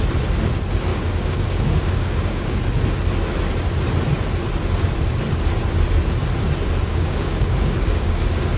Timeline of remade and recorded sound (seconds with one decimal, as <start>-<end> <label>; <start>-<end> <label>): 0.0-0.9 recorded; 0.9-2.6 remade; 2.6-6.9 recorded; 6.9-8.2 remade; 8.2-8.6 recorded